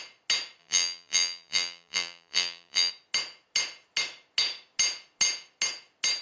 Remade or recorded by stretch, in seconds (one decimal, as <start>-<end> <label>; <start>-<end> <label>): 0.0-0.6 recorded; 0.6-2.9 remade; 2.9-6.2 recorded